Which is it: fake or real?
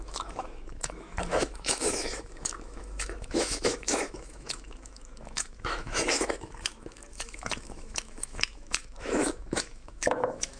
fake